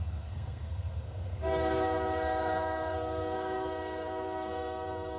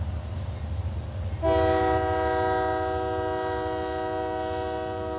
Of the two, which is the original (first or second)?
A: second